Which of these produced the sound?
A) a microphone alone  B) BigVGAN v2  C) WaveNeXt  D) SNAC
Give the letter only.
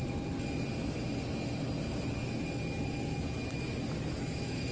A